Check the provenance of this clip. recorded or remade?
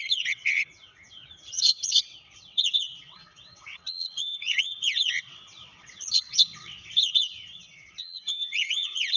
remade